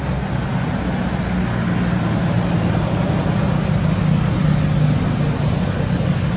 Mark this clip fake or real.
real